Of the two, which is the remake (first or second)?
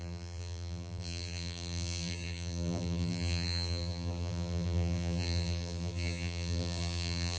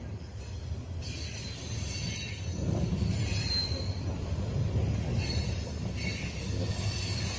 first